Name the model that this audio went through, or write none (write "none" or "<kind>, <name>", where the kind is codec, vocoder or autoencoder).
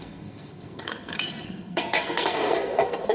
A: codec, SNAC